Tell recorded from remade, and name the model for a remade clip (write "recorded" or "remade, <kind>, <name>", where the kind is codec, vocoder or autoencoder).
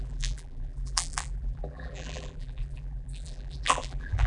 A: remade, vocoder, BigVGAN v2